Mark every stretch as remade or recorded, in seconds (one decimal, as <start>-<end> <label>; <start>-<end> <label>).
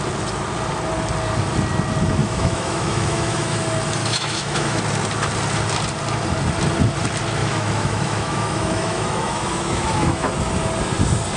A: 0.0-2.2 recorded; 2.2-3.6 remade; 3.6-4.0 recorded; 4.0-4.8 remade; 4.8-7.4 recorded; 7.4-10.3 remade; 10.3-11.4 recorded